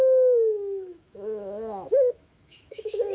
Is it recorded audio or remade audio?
remade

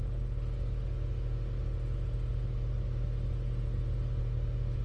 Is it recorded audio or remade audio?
recorded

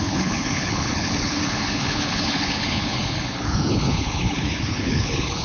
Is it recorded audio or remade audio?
remade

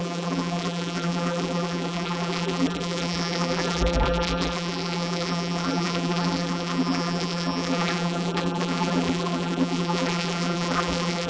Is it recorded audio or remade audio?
remade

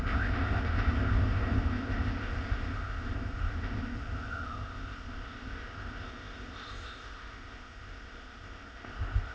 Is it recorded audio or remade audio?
remade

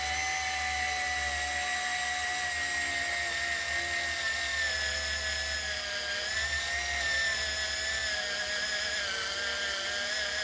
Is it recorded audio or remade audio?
recorded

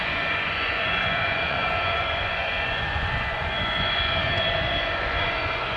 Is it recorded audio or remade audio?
remade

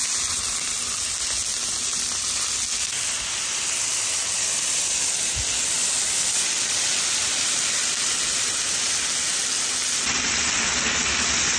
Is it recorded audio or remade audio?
recorded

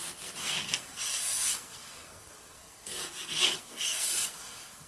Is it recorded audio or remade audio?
remade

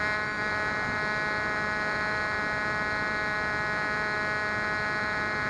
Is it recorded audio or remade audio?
recorded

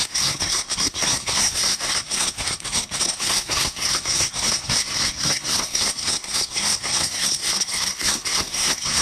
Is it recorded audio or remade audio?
remade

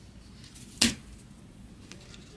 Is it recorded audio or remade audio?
recorded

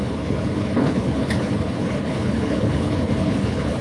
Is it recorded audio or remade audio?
remade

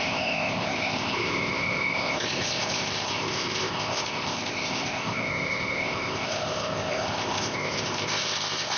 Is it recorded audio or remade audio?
remade